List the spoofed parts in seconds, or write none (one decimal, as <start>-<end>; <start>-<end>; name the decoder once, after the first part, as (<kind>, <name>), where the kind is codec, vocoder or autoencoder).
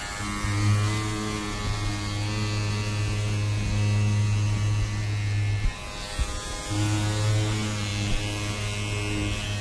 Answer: none